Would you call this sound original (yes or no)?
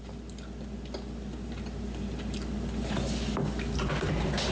yes